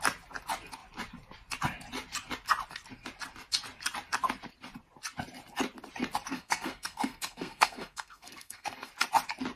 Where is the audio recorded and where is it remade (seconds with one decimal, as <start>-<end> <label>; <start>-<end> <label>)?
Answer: 0.0-6.3 recorded; 6.3-8.9 remade; 8.9-9.6 recorded